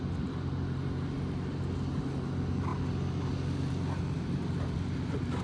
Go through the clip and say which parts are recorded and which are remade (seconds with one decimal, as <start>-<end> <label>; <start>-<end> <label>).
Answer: 0.0-5.4 recorded